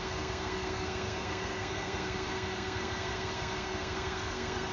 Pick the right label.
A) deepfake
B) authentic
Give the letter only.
A